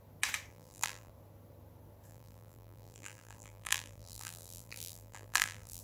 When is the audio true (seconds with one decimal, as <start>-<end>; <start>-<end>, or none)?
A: 0.0-0.5; 1.1-2.1